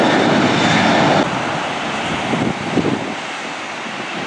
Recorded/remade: recorded